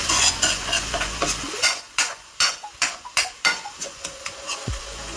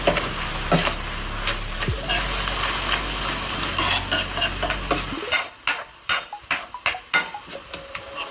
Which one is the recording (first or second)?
second